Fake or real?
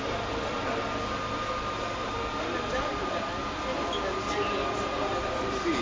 real